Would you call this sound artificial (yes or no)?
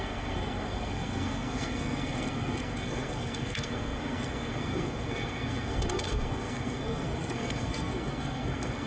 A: yes